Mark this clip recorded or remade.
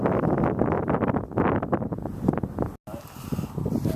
recorded